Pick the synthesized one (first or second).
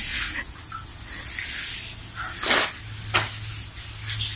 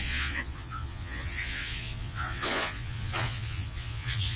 second